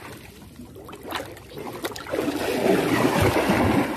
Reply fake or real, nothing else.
real